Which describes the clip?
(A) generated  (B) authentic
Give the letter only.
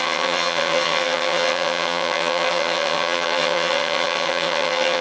A